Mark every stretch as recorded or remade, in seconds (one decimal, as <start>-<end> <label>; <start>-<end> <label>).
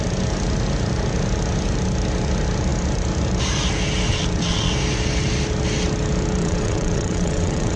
0.0-4.1 recorded; 4.1-4.7 remade; 4.7-6.4 recorded; 6.4-7.8 remade